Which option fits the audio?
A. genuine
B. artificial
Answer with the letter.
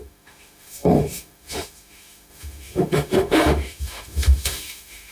B